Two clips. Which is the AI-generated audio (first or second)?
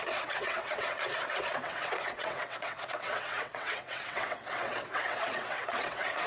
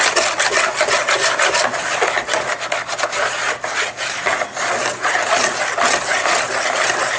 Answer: first